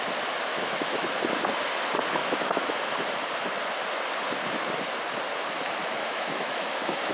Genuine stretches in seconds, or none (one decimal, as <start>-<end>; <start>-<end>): 0.0-0.5; 1.2-2.2; 2.7-5.8